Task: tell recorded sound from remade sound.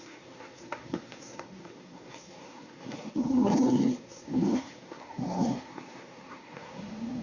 remade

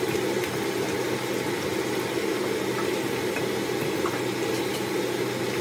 recorded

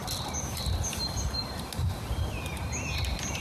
recorded